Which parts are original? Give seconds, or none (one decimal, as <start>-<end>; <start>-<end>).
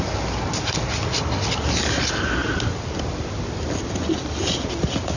0.0-5.2